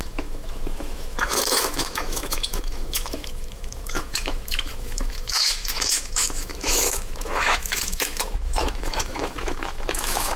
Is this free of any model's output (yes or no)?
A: no